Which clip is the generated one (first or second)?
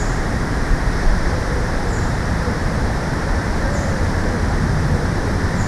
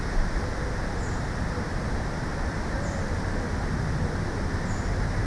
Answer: first